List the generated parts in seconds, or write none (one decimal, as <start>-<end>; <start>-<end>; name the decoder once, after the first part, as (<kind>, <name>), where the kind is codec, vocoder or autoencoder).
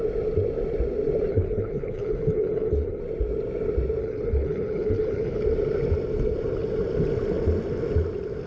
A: 1.3-3.0 (codec, HILCodec); 4.0-5.4